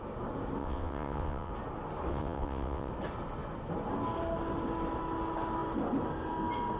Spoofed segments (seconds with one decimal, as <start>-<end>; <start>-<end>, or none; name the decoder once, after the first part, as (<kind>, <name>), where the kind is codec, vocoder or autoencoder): 0.6-1.5 (vocoder, WaveNeXt); 2.1-2.9